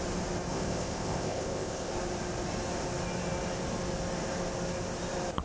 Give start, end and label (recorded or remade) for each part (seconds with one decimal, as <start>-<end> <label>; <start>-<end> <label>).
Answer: 0.0-0.5 recorded; 0.5-1.9 remade; 1.9-5.4 recorded